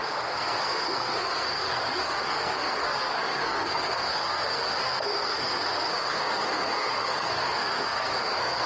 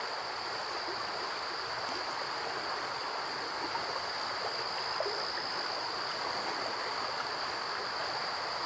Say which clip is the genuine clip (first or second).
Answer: second